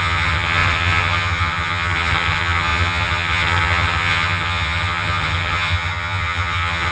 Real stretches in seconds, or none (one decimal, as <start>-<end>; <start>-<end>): none